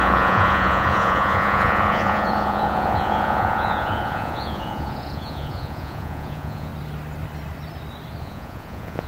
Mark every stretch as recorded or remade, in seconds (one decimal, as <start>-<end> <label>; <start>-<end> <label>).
0.0-6.7 remade; 6.7-8.2 recorded; 8.2-9.1 remade